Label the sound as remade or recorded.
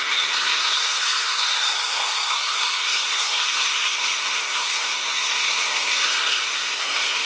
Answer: remade